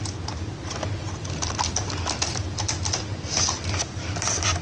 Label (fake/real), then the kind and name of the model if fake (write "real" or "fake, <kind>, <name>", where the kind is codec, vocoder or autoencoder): real